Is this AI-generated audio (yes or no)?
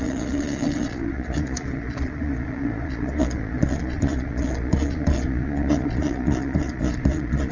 yes